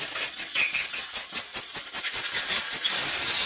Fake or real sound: real